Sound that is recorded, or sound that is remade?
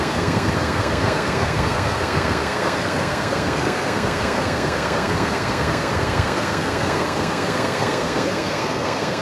remade